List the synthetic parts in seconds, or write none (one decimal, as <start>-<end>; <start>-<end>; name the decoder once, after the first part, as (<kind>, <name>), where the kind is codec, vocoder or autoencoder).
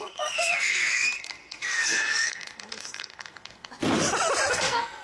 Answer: 0.0-3.7 (codec, SNAC); 4.5-5.0